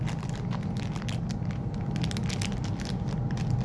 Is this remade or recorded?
recorded